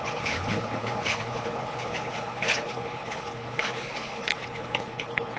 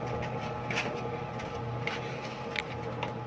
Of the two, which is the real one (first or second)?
second